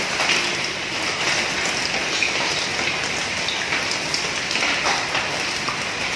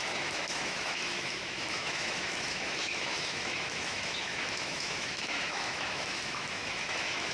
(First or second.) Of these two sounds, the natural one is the first